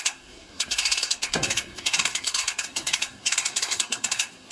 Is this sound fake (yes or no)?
yes